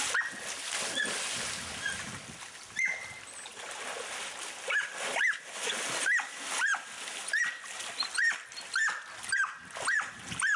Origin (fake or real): real